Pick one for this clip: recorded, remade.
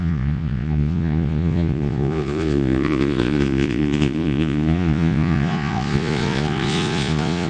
remade